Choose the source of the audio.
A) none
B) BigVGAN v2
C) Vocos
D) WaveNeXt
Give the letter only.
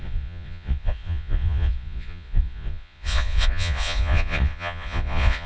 C